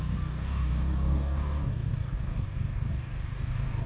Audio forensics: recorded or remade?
remade